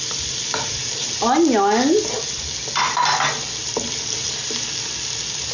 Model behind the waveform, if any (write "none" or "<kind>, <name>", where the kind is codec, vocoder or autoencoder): none